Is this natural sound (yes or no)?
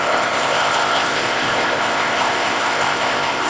no